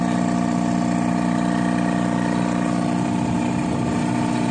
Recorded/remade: recorded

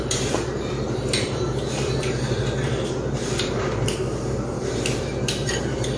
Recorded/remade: remade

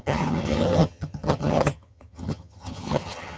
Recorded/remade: remade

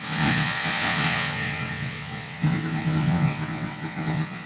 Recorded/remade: remade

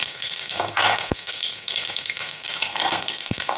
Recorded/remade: remade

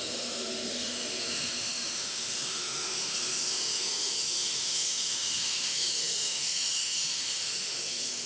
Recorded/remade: remade